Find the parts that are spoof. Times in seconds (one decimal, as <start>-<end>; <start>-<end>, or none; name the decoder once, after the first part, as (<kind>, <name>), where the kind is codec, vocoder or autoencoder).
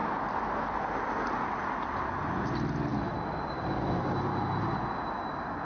none